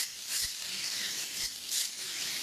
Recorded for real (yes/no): no